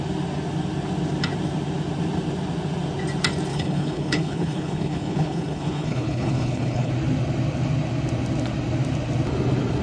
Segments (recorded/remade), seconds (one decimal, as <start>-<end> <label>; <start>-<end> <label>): 0.0-3.5 recorded; 3.5-6.9 remade; 6.9-9.8 recorded